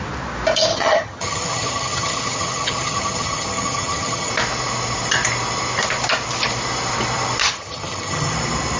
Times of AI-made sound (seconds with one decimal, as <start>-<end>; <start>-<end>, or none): 0.7-4.3; 7.4-8.3